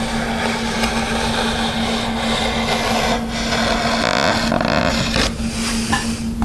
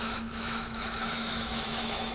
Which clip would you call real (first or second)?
first